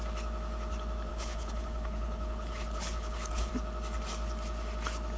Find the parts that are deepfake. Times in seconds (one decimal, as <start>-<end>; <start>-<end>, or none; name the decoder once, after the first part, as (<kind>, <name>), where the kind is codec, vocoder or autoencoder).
1.1-3.5 (codec, HILCodec)